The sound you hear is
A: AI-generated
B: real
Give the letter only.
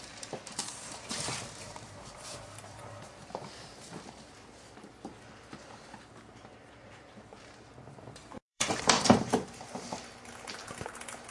A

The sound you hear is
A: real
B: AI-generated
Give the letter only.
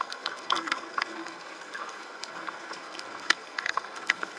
B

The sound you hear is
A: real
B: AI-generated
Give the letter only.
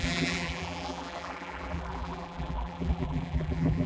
B